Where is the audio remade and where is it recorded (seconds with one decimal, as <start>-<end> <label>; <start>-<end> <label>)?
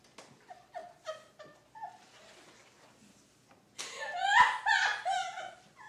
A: 0.0-5.9 recorded